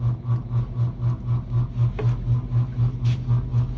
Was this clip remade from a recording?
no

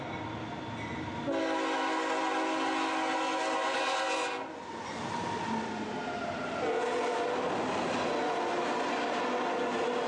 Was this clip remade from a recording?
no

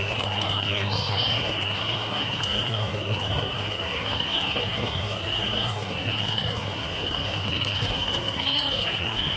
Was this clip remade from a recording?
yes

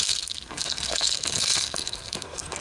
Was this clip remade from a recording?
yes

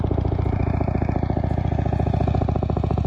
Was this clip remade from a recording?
no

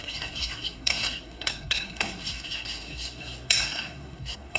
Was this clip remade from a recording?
yes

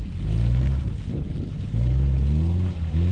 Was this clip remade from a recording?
no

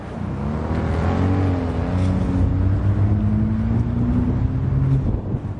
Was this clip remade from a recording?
no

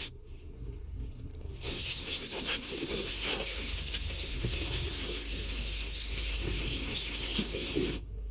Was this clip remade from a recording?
yes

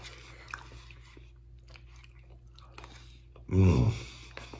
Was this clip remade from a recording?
no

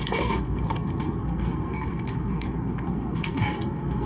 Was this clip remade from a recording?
yes